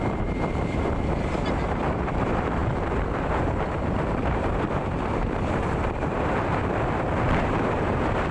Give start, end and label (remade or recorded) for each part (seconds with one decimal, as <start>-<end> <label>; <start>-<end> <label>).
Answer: 0.0-6.6 remade; 6.6-7.4 recorded; 7.4-8.3 remade